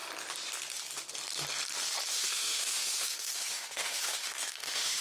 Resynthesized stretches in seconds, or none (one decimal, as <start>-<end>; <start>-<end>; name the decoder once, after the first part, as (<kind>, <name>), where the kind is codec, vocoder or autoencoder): 2.1-5.0 (autoencoder, DAC-VAE)